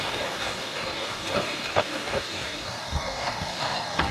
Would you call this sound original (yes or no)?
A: no